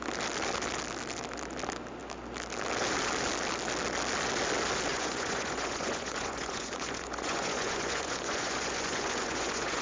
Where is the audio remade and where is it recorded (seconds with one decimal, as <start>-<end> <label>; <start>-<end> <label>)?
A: 0.0-4.9 recorded; 4.9-9.8 remade